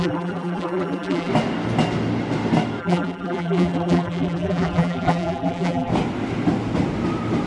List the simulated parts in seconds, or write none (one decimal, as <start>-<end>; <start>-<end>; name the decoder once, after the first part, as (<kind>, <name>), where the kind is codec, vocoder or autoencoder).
0.0-1.3 (vocoder, BigVGAN v2); 2.8-5.9